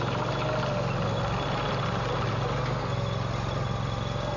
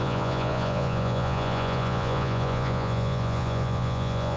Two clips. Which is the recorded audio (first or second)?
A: first